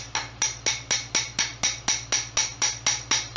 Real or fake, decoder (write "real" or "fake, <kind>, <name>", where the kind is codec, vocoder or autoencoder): real